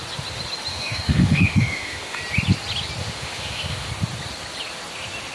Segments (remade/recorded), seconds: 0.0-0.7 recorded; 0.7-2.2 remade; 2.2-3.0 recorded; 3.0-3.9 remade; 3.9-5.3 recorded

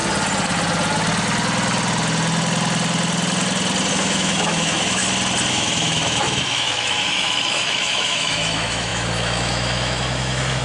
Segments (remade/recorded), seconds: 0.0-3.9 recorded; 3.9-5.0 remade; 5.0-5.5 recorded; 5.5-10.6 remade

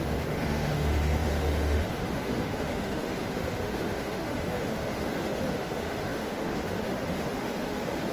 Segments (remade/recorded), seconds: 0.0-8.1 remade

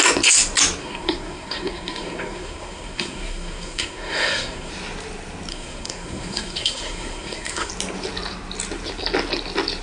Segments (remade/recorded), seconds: 0.0-0.8 recorded; 0.8-4.7 remade; 4.7-5.5 recorded; 5.5-7.7 remade; 7.7-9.8 recorded

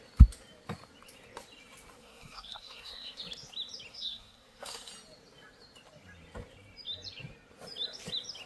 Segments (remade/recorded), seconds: 0.0-2.0 recorded; 2.0-3.2 remade; 3.2-3.9 recorded; 3.9-4.9 remade; 4.9-8.5 recorded

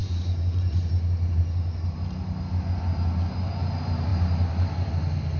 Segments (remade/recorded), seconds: 0.0-1.4 remade; 1.4-5.4 recorded